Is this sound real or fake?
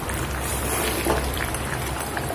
fake